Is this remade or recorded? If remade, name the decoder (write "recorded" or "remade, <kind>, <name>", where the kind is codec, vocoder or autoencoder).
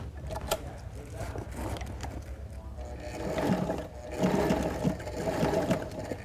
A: recorded